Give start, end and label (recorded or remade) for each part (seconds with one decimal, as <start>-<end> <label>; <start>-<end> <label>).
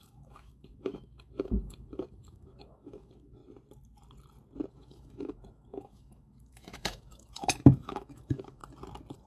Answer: 0.0-3.4 remade; 3.4-4.7 recorded; 4.7-8.6 remade; 8.6-9.3 recorded